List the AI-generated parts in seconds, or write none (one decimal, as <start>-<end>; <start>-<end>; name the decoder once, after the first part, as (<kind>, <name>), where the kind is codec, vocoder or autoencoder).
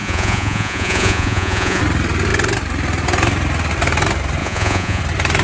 0.0-1.8 (vocoder, Vocos); 4.4-5.0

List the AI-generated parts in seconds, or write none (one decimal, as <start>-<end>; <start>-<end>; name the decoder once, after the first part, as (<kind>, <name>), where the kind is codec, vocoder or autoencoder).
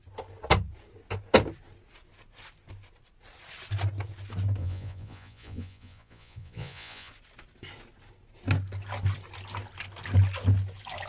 4.6-7.1 (vocoder, Vocos)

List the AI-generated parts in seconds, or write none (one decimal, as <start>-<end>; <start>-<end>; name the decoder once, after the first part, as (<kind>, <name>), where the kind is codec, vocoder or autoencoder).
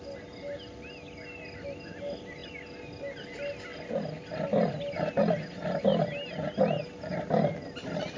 none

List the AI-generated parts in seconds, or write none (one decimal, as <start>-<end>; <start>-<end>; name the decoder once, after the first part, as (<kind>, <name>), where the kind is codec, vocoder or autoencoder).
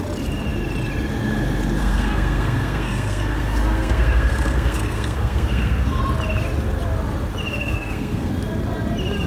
1.8-6.0 (codec, SNAC); 7.6-8.3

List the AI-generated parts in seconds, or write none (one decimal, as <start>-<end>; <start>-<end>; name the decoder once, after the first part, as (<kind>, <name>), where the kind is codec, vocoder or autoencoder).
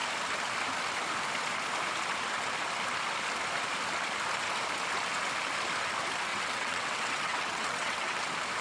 6.3-8.2 (vocoder, WaveNeXt)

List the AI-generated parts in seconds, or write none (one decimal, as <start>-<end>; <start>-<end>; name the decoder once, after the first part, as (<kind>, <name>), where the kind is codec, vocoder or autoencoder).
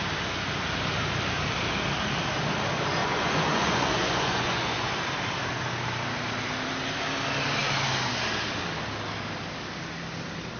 3.0-4.9 (vocoder, Vocos)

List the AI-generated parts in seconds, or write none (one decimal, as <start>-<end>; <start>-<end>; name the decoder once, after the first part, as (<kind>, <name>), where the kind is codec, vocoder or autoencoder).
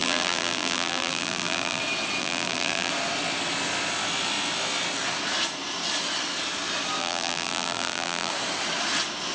0.0-1.8 (vocoder, BigVGAN v2); 2.2-2.9; 7.0-8.3